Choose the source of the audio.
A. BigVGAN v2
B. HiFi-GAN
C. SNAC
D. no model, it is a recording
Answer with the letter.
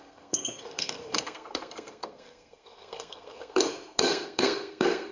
C